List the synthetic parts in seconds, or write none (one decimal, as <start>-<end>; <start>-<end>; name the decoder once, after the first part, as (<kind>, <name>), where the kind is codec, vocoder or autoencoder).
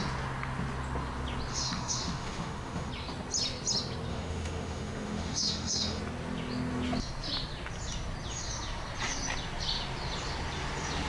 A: 1.5-2.9 (autoencoder, DAC-VAE); 4.1-6.0